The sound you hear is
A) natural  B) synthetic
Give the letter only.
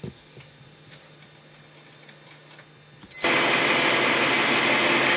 A